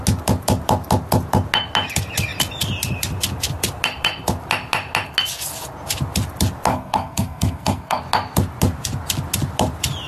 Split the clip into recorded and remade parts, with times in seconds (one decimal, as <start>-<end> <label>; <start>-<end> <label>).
0.0-6.7 recorded; 6.7-8.0 remade; 8.0-10.1 recorded